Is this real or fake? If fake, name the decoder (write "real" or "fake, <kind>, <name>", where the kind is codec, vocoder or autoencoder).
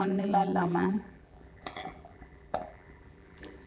fake, vocoder, BigVGAN v2